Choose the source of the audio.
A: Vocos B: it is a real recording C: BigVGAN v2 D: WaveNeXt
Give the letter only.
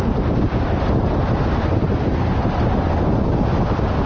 B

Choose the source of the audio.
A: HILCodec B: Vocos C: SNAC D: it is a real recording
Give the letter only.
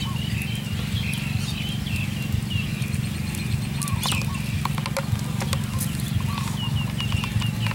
D